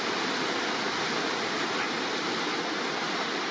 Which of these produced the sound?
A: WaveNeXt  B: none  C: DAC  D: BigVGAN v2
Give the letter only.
B